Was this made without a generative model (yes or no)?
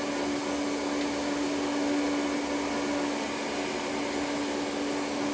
yes